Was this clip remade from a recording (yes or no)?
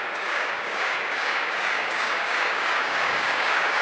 yes